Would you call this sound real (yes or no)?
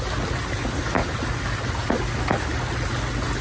yes